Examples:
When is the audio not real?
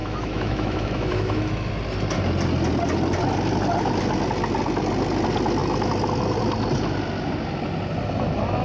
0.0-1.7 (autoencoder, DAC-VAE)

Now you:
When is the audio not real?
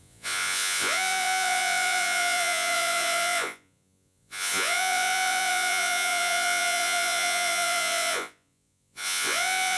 0.0-9.8 (vocoder, Vocos)